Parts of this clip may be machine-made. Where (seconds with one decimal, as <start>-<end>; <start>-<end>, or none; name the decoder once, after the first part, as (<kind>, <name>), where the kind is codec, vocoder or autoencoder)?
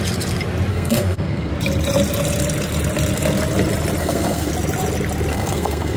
0.7-1.5 (codec, SNAC); 4.0-4.5; 5.3-6.0